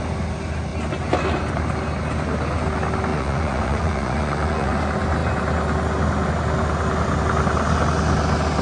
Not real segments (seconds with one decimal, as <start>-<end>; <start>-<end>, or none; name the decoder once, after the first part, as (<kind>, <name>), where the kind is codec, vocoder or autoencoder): 3.1-4.8 (vocoder, Vocos)